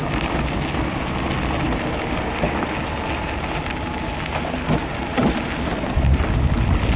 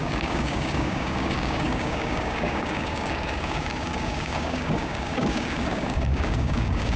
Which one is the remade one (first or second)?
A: second